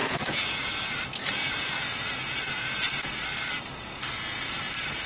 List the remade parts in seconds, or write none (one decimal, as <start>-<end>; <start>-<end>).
0.0-0.7; 1.2-3.1

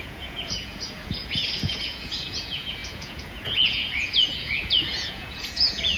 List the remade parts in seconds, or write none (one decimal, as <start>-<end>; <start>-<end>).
0.0-6.0

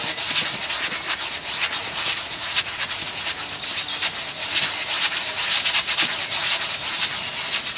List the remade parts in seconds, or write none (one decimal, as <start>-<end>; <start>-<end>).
1.7-3.2

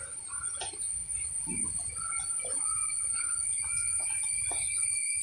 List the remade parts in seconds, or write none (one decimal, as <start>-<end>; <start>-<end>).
none

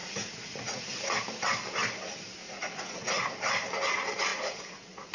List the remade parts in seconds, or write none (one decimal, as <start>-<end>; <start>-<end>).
0.0-0.8; 2.4-3.3; 4.3-5.1

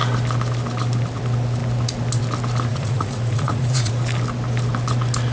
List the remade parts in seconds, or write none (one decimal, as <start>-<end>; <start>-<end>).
2.7-3.9

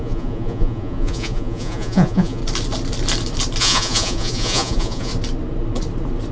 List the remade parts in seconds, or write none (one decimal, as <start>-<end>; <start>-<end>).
0.0-2.4; 3.6-5.1

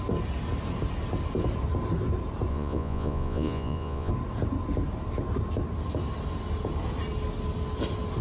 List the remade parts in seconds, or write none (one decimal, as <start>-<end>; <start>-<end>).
2.5-4.1